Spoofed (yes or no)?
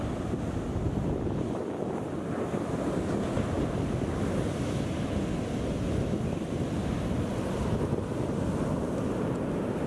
no